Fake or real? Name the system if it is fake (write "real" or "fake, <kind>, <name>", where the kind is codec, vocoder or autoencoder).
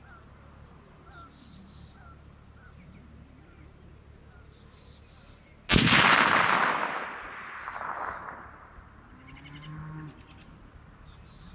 real